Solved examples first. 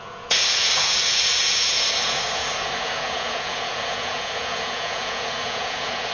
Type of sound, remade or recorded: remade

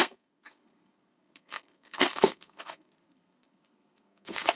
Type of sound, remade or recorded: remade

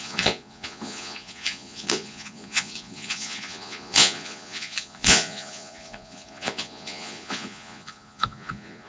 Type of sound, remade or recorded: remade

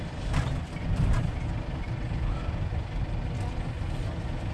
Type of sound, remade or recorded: recorded